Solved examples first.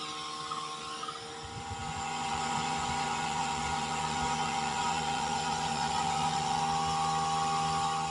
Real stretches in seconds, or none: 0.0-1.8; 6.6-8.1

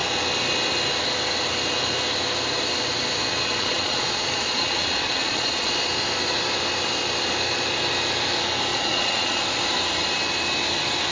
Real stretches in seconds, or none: 0.0-3.3; 5.7-8.7; 9.4-11.1